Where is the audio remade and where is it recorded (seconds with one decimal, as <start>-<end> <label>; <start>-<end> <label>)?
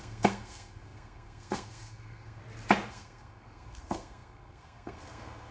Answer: 0.0-2.4 remade; 2.4-2.9 recorded; 2.9-5.5 remade